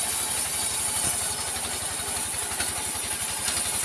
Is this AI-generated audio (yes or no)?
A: no